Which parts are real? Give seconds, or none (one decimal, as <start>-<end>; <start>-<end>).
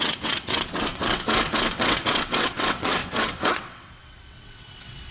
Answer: none